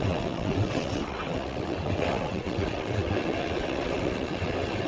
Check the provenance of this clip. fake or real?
fake